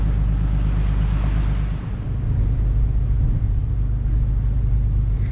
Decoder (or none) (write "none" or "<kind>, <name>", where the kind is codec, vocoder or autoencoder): none